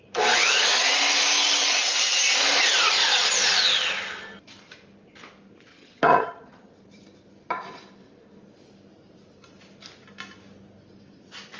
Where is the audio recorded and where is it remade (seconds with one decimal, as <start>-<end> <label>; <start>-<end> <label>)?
0.0-5.7 recorded; 5.7-6.7 remade; 6.7-11.6 recorded